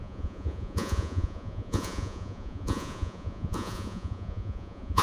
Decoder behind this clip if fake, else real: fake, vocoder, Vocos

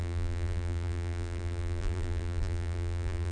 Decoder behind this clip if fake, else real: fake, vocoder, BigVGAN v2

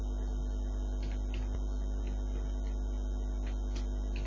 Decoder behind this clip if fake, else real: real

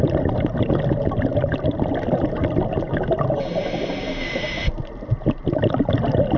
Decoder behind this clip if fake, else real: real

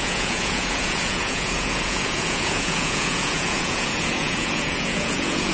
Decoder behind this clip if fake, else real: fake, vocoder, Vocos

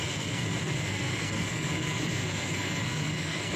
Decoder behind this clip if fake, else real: fake, codec, SNAC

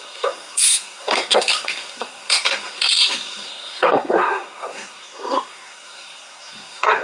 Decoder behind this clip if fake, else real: fake, codec, SNAC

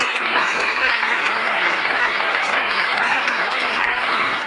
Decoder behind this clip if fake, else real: fake, codec, SNAC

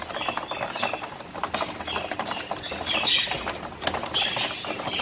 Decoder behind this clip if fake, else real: real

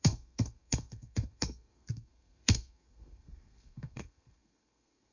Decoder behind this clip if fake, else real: fake, codec, SNAC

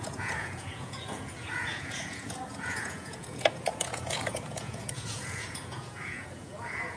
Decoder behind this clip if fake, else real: fake, vocoder, Vocos